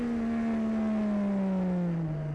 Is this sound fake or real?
real